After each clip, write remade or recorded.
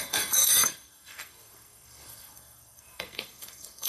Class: remade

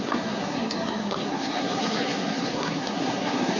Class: remade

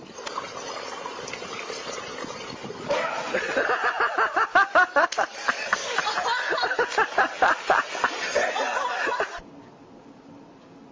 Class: recorded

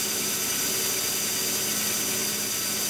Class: recorded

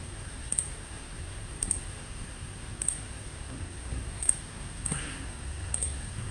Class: remade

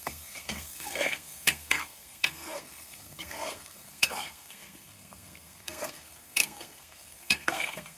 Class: remade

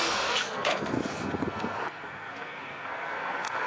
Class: remade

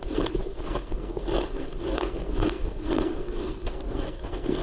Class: remade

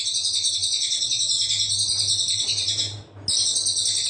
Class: recorded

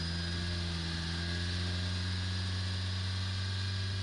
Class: recorded